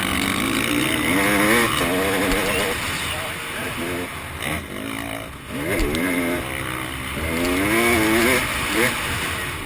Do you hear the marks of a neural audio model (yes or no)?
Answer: no